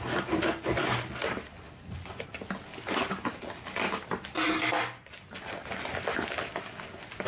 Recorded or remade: recorded